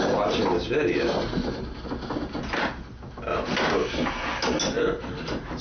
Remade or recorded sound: recorded